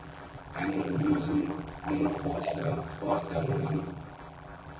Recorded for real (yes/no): no